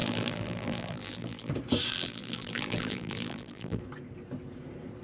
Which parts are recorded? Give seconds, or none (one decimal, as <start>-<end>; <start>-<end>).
1.5-1.9; 3.8-5.0